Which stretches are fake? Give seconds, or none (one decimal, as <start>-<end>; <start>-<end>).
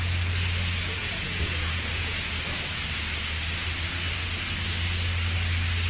1.0-2.3